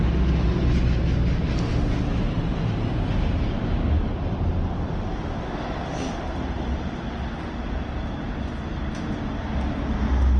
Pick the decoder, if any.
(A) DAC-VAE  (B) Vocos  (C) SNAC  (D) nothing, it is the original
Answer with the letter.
D